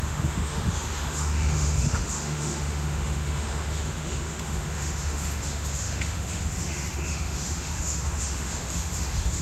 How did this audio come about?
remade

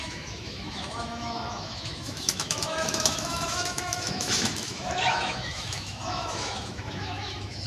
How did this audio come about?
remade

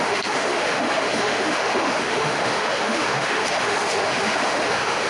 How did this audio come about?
remade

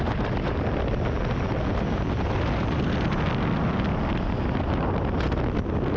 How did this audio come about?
recorded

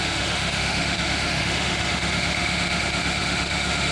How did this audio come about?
remade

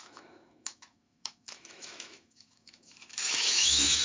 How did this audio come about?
remade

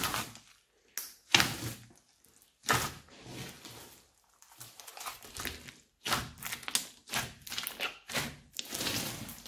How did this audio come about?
recorded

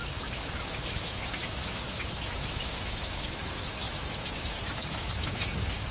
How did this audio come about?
remade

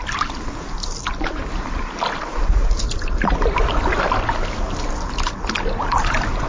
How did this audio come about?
recorded